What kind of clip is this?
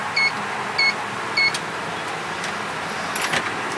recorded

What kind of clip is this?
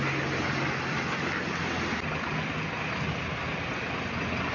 recorded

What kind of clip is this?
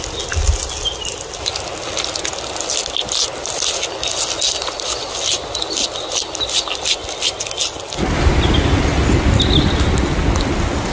recorded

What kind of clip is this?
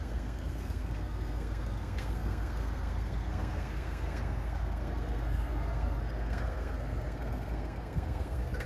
remade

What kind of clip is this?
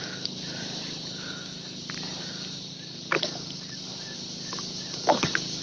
remade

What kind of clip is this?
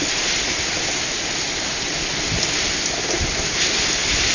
recorded